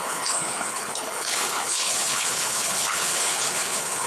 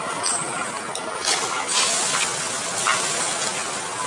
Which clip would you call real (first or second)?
second